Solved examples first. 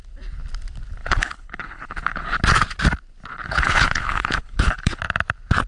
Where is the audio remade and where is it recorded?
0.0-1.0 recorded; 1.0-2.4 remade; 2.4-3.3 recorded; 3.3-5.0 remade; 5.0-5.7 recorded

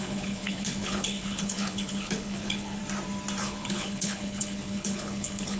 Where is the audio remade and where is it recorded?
0.0-2.8 remade; 2.8-3.4 recorded; 3.4-5.6 remade

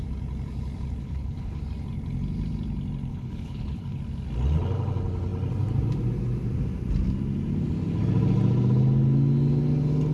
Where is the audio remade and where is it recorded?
0.0-1.0 recorded; 1.0-1.6 remade; 1.6-3.1 recorded; 3.1-4.0 remade; 4.0-10.1 recorded